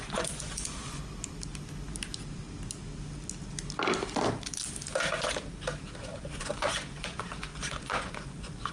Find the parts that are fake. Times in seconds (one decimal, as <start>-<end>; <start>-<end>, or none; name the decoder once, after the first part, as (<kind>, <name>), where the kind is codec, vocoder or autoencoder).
0.0-1.0 (vocoder, Vocos); 6.2-8.7